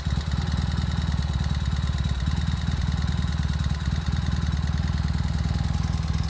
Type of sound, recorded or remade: recorded